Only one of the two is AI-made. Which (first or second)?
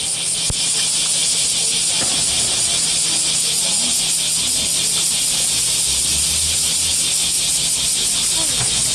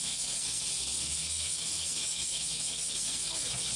second